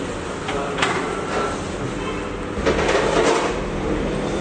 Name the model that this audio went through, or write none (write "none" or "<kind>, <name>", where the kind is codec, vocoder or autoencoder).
none